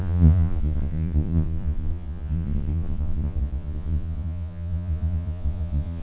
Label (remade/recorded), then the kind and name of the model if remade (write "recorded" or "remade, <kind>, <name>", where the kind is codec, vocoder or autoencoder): remade, vocoder, Vocos